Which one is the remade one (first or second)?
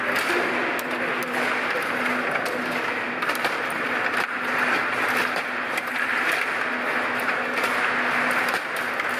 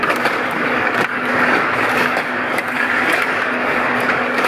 second